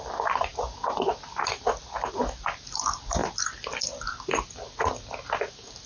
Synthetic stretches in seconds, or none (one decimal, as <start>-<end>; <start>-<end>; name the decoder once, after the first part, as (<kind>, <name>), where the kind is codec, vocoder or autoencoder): none